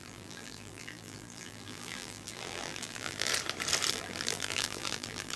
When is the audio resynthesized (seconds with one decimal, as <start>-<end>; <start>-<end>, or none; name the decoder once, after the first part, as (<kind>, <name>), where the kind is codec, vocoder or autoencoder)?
0.0-3.3 (vocoder, BigVGAN v2); 3.9-5.4